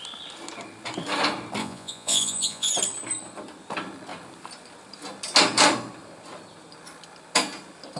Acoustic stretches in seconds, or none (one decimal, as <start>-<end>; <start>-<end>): 0.0-1.6; 2.7-8.0

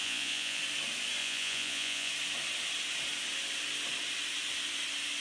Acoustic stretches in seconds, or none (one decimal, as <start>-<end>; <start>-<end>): 0.6-1.2; 2.1-5.2

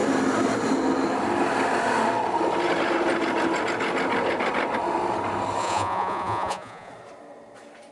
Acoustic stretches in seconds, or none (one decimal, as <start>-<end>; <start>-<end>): 0.0-5.6; 6.9-7.9

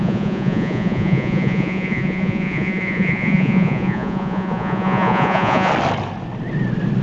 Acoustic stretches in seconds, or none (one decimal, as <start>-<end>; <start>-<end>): 5.7-7.0

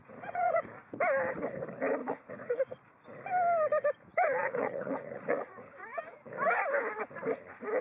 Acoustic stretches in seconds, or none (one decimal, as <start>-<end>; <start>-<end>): 0.6-2.0; 2.5-4.1; 6.0-7.8

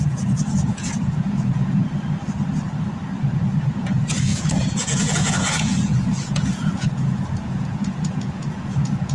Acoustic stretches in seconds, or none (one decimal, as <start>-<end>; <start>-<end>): 1.8-3.6

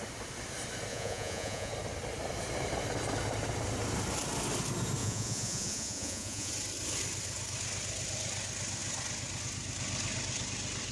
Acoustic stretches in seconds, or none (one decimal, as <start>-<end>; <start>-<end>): 0.0-0.9; 1.7-5.0; 6.5-10.9